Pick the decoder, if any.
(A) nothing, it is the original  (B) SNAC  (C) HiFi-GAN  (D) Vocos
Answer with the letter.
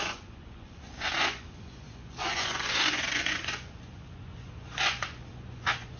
D